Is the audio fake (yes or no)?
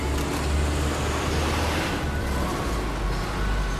no